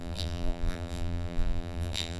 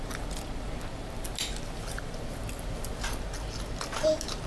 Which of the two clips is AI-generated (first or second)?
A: first